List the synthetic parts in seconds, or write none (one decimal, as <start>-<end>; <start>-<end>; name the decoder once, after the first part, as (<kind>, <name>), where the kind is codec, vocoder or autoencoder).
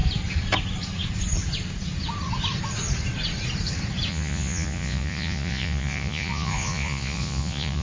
4.1-7.8 (vocoder, Vocos)